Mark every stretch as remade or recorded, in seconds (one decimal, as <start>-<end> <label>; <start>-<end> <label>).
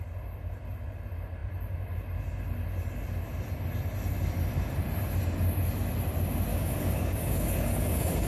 0.0-6.5 recorded; 6.5-8.3 remade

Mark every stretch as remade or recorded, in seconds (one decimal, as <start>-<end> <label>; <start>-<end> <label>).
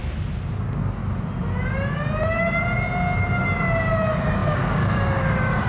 0.0-0.5 recorded; 0.5-1.0 remade; 1.0-3.9 recorded; 3.9-5.7 remade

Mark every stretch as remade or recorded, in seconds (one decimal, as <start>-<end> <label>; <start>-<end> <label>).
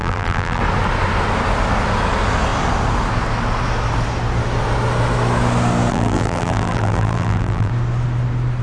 0.0-0.6 remade; 0.6-5.9 recorded; 5.9-7.7 remade; 7.7-8.6 recorded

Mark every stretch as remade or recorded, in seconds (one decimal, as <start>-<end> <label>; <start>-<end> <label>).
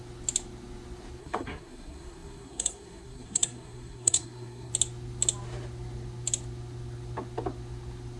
0.0-1.2 recorded; 1.2-4.7 remade; 4.7-8.2 recorded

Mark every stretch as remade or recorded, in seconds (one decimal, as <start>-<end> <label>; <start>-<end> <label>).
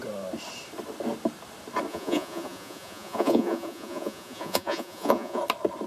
0.0-1.9 recorded; 1.9-5.4 remade; 5.4-5.9 recorded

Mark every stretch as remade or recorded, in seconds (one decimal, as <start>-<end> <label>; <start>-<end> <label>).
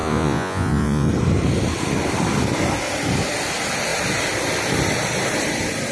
0.0-1.1 remade; 1.1-5.9 recorded